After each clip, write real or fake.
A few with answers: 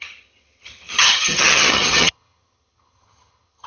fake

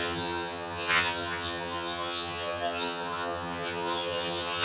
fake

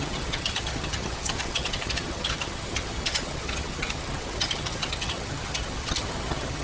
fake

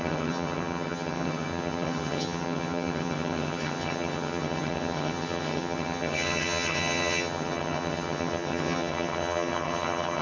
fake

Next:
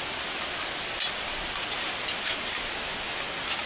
real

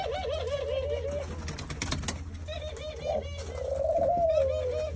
real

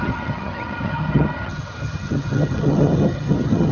fake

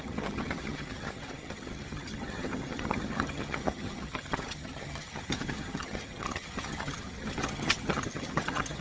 fake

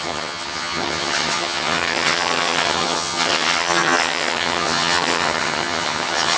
fake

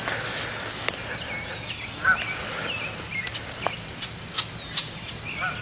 real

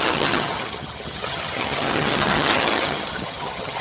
fake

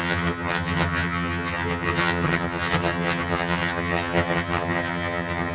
fake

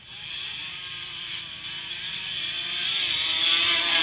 real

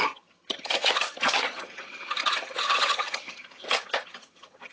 fake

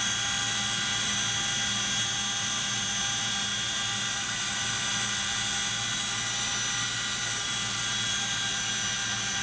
real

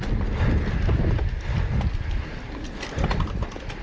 real